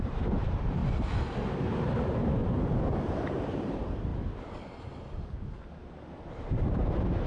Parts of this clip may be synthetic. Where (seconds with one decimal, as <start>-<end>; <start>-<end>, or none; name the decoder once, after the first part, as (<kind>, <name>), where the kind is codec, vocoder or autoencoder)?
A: 0.0-0.8 (vocoder, BigVGAN v2); 1.8-2.4; 3.0-4.1; 6.3-7.3